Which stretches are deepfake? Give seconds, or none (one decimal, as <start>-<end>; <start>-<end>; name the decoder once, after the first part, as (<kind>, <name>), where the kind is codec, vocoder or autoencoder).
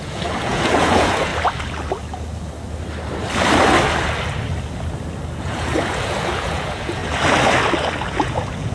0.0-1.3 (vocoder, Vocos); 5.4-7.0; 8.1-8.7